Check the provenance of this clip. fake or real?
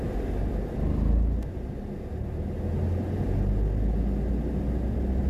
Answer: real